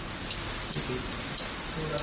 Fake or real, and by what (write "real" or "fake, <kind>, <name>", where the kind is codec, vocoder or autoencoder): real